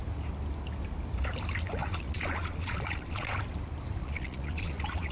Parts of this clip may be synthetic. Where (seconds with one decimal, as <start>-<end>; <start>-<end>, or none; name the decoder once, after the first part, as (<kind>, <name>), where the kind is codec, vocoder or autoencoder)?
1.8-3.3 (vocoder, Vocos); 4.0-5.1